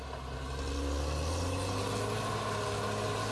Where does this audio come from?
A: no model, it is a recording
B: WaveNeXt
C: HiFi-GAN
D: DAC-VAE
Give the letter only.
A